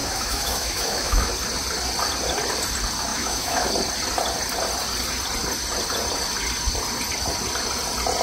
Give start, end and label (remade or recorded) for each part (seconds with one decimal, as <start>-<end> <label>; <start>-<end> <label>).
0.0-1.3 remade; 1.3-3.1 recorded; 3.1-3.7 remade; 3.7-8.2 recorded